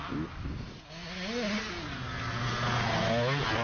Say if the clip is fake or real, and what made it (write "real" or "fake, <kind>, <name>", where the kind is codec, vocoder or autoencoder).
real